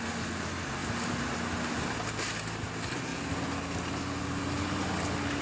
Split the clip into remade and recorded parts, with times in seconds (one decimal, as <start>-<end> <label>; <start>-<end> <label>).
0.0-5.4 recorded